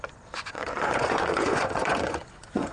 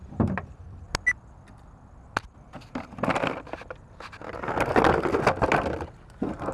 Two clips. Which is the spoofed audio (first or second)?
first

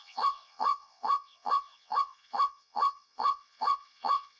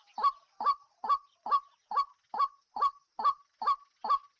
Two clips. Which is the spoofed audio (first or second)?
first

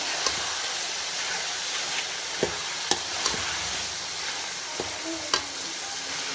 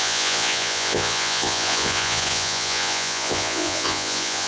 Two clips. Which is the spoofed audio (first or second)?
second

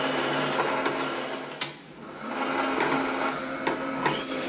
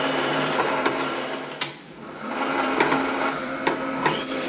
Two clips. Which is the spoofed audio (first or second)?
second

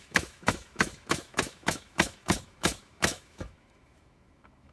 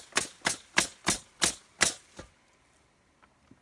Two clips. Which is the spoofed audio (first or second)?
first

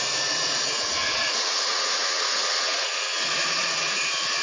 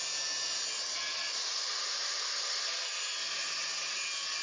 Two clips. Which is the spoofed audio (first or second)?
first